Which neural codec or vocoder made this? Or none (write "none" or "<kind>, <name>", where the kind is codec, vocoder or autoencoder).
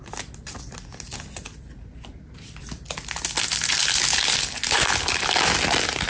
none